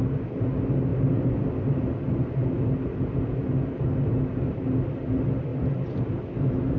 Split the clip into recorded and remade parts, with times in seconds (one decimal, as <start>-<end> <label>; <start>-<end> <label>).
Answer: 0.0-6.8 recorded

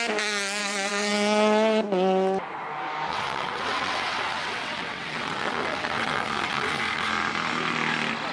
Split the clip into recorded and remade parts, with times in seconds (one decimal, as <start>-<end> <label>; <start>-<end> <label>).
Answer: 0.0-0.6 recorded; 0.6-1.1 remade; 1.1-3.1 recorded; 3.1-7.1 remade; 7.1-8.3 recorded

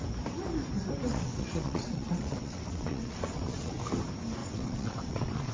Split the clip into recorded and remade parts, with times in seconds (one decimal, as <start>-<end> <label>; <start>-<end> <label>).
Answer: 0.0-1.1 recorded; 1.1-3.8 remade; 3.8-4.4 recorded; 4.4-5.5 remade

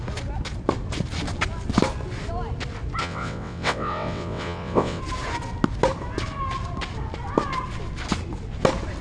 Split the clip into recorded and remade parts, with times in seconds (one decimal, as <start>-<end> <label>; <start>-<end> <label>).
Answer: 0.0-3.0 recorded; 3.0-5.0 remade; 5.0-9.0 recorded

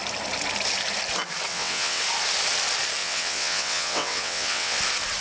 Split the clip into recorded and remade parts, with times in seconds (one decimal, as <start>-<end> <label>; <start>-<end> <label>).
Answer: 0.0-1.5 recorded; 1.5-2.0 remade; 2.0-3.0 recorded; 3.0-4.8 remade; 4.8-5.2 recorded

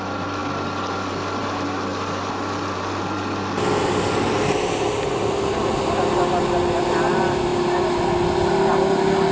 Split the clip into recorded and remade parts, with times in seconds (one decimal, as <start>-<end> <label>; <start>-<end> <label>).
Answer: 0.0-9.3 recorded

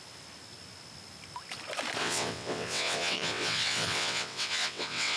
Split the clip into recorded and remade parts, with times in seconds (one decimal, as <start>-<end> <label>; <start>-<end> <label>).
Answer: 0.0-2.0 recorded; 2.0-5.2 remade

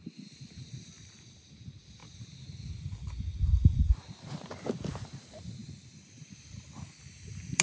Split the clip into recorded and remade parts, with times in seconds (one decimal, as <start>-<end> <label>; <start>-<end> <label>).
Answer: 0.0-7.6 recorded